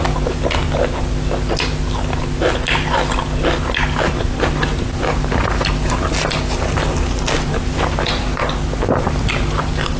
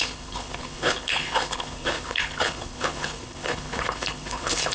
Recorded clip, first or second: first